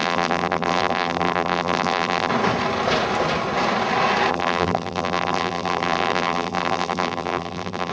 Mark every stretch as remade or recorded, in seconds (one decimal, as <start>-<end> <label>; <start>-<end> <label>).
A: 0.0-2.3 remade; 2.3-4.3 recorded; 4.3-7.9 remade